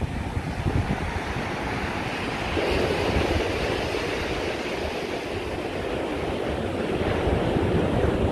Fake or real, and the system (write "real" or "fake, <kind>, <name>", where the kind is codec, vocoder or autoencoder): real